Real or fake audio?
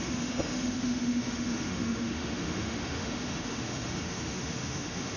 fake